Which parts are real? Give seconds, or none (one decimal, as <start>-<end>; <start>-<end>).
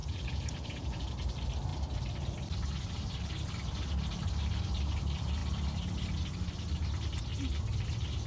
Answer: 1.1-8.3